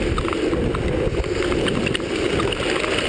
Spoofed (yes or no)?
no